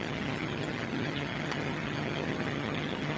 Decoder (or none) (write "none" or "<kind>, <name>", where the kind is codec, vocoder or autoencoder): vocoder, HiFi-GAN